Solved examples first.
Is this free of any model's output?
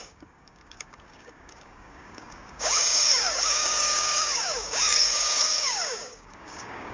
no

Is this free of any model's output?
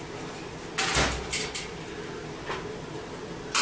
yes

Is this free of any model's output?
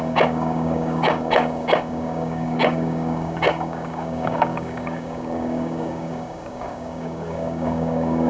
no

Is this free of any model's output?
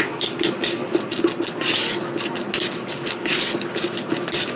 yes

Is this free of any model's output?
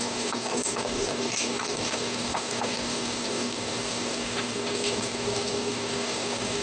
no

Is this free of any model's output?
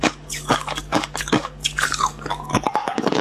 no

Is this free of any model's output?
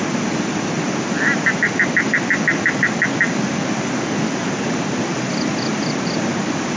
yes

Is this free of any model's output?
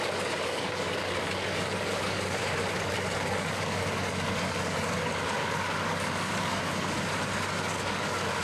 no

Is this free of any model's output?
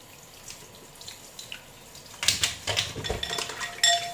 yes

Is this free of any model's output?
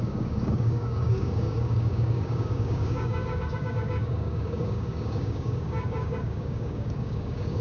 no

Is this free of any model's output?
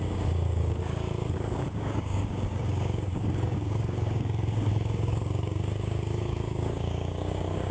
no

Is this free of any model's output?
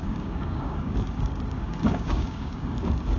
no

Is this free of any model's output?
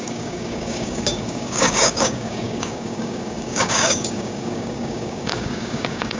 no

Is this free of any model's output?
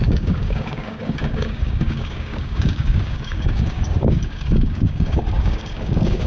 no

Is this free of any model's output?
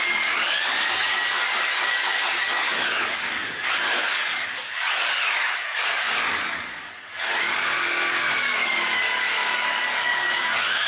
no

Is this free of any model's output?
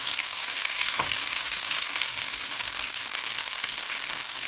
no